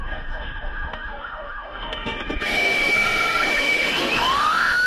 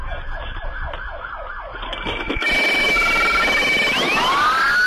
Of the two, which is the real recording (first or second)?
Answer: second